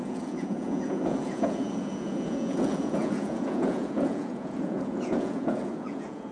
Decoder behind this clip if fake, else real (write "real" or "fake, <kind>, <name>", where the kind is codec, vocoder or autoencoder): fake, vocoder, Vocos